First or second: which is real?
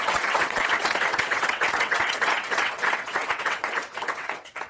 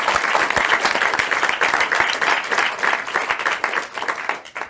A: second